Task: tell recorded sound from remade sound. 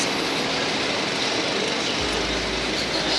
recorded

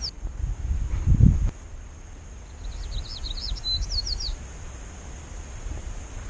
recorded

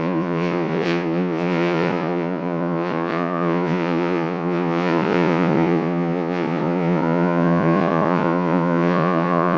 remade